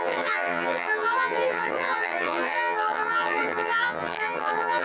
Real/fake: fake